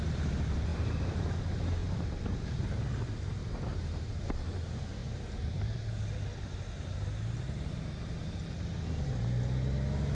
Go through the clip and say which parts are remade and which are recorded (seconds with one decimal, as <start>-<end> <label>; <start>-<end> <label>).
0.0-0.7 recorded; 0.7-1.2 remade; 1.2-1.8 recorded; 1.8-2.9 remade; 2.9-3.4 recorded; 3.4-4.3 remade; 4.3-5.0 recorded; 5.0-5.8 remade; 5.8-10.1 recorded